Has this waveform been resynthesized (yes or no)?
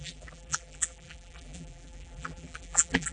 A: yes